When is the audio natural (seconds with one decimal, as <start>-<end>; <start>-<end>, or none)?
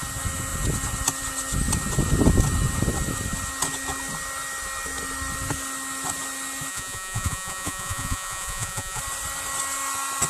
0.0-6.7; 9.0-10.3